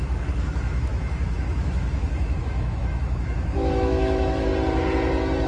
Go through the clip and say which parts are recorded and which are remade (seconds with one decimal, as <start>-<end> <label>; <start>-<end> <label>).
0.0-4.5 remade; 4.5-5.5 recorded